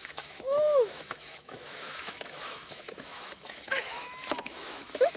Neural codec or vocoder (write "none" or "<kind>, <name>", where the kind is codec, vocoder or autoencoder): autoencoder, DAC-VAE